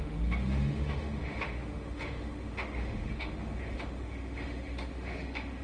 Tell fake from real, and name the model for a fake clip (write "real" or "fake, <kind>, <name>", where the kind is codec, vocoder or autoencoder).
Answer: fake, autoencoder, DAC-VAE